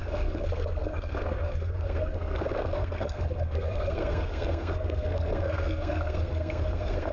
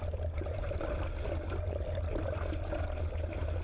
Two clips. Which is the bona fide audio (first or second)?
second